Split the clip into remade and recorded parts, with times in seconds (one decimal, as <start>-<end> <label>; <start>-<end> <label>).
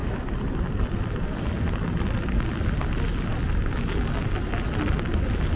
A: 0.0-5.6 recorded